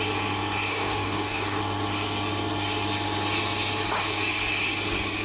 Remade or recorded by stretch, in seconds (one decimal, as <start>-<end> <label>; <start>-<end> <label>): 0.0-0.7 recorded; 0.7-1.6 remade; 1.6-5.2 recorded